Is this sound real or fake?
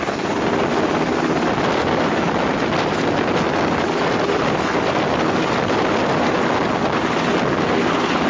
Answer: real